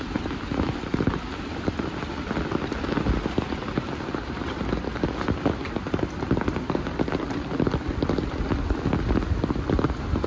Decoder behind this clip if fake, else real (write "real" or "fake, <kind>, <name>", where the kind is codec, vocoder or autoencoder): real